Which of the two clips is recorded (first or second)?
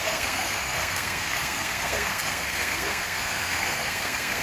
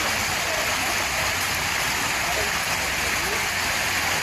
second